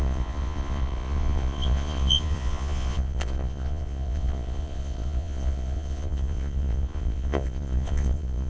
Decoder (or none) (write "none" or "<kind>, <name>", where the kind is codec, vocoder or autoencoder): vocoder, Vocos